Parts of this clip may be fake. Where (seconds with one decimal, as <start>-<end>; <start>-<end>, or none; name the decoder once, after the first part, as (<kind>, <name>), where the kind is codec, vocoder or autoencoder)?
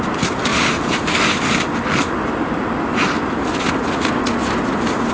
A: none